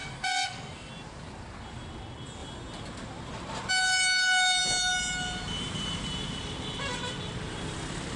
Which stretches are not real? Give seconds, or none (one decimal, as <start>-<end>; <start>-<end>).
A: 0.0-0.9